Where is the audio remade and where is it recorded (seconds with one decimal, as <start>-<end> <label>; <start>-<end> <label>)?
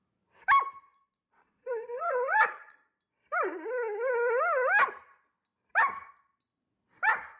0.0-0.9 recorded; 0.9-2.9 remade; 2.9-7.4 recorded